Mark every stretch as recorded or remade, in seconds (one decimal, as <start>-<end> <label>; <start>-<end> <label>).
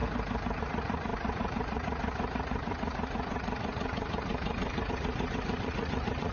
0.0-0.6 recorded; 0.6-6.3 remade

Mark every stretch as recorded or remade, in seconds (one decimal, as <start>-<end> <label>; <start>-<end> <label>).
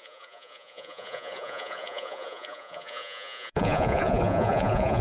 0.0-5.0 remade